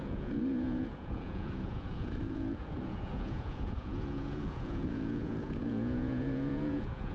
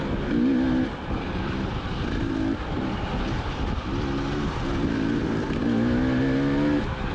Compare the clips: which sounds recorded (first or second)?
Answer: second